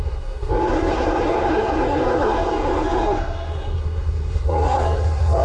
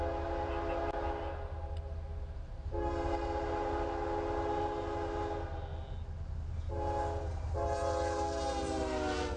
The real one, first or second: second